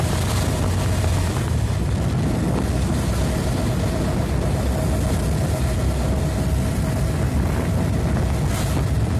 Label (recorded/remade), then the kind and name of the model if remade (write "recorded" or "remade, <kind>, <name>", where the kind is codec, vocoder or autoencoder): recorded